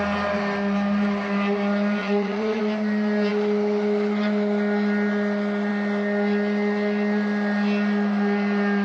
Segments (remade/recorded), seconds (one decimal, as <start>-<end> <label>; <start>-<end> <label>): 0.0-2.0 recorded; 2.0-2.6 remade; 2.6-8.8 recorded